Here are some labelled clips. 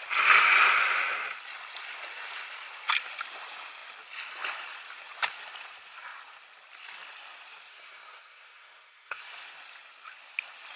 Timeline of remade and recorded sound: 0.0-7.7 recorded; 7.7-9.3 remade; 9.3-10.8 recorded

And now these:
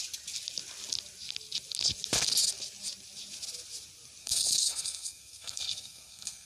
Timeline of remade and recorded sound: 0.0-4.2 recorded; 4.2-6.5 remade

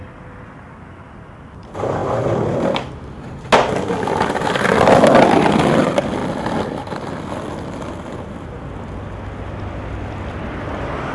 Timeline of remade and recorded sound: 0.0-11.1 recorded